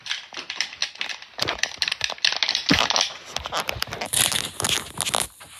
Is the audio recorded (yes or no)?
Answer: yes